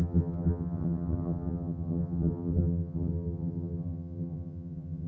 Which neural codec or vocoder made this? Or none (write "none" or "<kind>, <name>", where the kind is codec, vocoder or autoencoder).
vocoder, HiFi-GAN